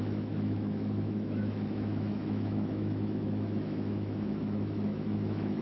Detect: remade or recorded remade